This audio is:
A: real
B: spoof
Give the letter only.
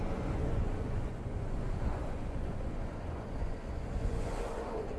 B